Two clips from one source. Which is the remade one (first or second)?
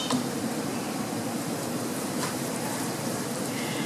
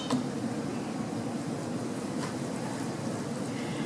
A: first